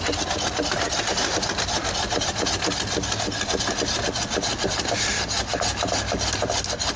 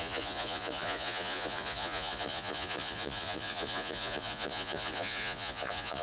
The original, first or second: first